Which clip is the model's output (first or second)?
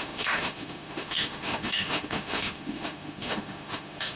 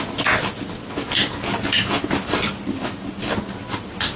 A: first